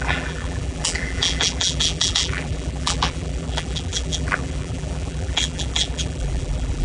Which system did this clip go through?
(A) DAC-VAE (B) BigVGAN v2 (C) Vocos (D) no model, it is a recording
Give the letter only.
B